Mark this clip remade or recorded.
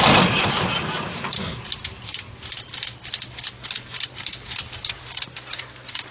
recorded